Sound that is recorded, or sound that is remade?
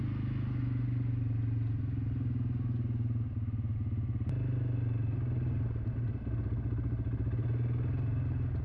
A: recorded